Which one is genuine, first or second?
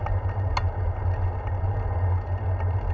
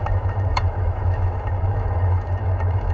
first